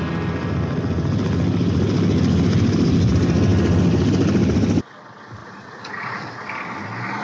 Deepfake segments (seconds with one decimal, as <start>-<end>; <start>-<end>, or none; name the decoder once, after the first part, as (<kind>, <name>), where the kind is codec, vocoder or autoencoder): 5.4-6.3 (vocoder, Vocos)